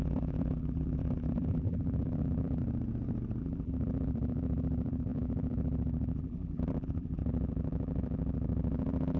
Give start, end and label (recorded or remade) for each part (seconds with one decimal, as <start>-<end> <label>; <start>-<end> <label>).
0.0-2.6 remade; 2.6-3.4 recorded; 3.4-9.2 remade